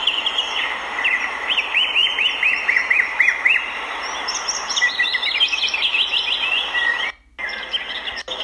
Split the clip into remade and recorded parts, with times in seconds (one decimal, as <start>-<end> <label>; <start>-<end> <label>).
0.0-1.6 remade; 1.6-2.0 recorded; 2.0-4.9 remade; 4.9-8.4 recorded